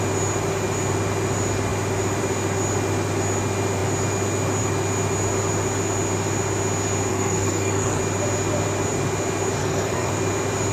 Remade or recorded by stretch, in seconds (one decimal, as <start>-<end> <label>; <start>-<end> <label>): 0.0-7.1 recorded; 7.1-8.0 remade; 8.0-9.6 recorded; 9.6-10.1 remade; 10.1-10.7 recorded